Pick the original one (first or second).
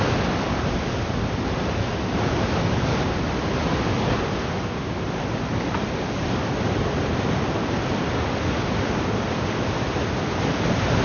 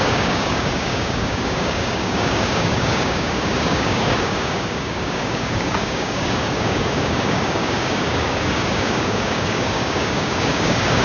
first